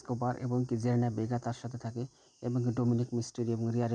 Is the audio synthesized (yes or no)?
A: no